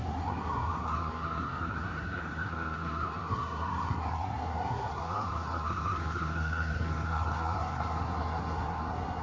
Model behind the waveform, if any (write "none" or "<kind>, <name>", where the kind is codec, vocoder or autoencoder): codec, SNAC